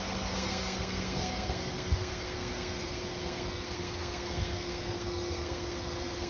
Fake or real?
fake